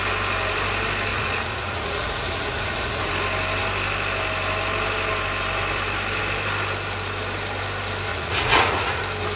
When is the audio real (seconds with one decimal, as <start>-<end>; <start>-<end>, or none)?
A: 0.0-1.1; 3.0-8.1; 9.0-9.4